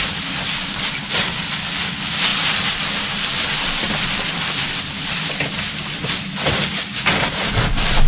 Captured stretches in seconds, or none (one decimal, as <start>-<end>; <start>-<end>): 0.0-8.1